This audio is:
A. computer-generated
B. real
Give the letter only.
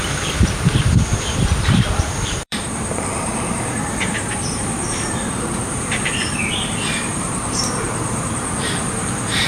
A